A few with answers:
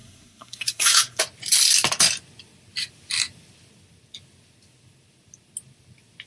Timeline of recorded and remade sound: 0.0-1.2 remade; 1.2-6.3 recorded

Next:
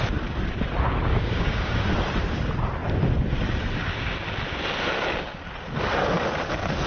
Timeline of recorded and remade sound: 0.0-1.1 recorded; 1.1-1.9 remade; 1.9-6.9 recorded

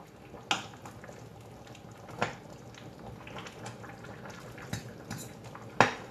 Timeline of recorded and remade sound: 0.0-1.3 recorded; 1.3-4.7 remade; 4.7-6.1 recorded

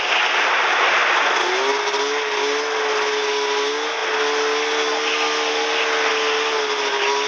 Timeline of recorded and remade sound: 0.0-7.3 recorded

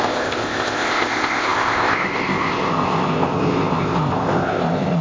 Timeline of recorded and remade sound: 0.0-5.0 remade

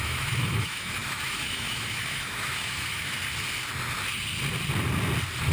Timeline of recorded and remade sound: 0.0-3.2 remade; 3.2-5.5 recorded